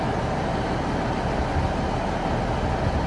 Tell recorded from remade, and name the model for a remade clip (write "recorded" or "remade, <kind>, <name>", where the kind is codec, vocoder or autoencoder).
recorded